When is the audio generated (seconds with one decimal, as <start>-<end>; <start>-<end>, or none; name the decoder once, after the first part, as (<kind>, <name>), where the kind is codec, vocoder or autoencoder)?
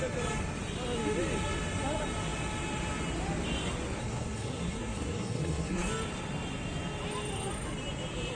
4.0-5.9 (codec, SNAC)